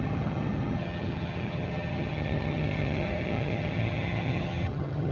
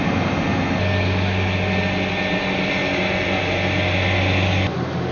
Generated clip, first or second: first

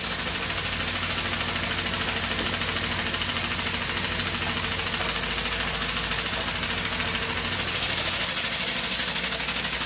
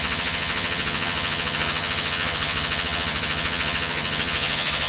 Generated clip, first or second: second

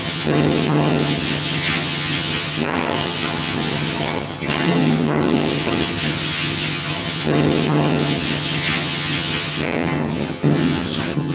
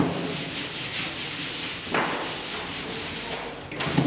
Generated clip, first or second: first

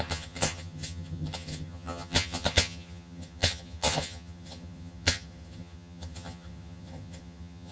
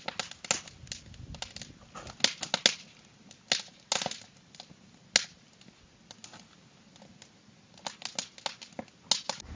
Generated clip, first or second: first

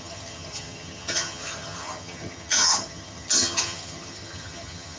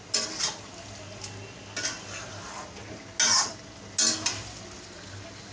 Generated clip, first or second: first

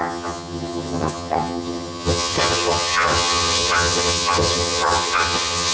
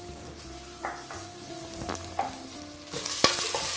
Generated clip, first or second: first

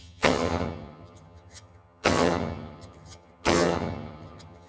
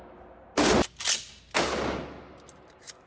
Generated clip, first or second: first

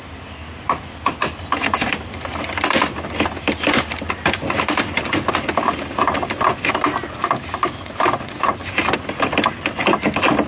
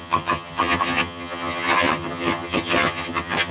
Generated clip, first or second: second